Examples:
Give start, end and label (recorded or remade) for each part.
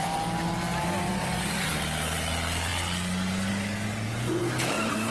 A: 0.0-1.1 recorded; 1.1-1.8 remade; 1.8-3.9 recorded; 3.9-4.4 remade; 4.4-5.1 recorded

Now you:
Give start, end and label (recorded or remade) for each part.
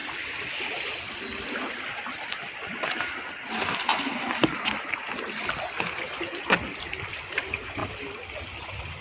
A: 0.0-3.5 recorded; 3.5-3.9 remade; 3.9-7.3 recorded; 7.3-7.8 remade; 7.8-8.6 recorded; 8.6-9.0 remade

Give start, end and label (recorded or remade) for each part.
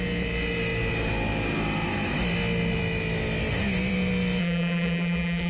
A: 0.0-4.4 recorded; 4.4-5.5 remade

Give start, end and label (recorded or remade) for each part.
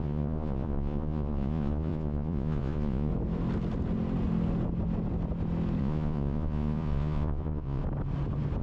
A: 0.0-3.1 remade; 3.1-5.8 recorded; 5.8-7.8 remade; 7.8-8.6 recorded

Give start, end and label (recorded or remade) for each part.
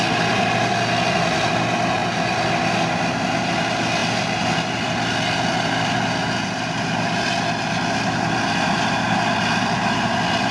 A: 0.0-10.5 recorded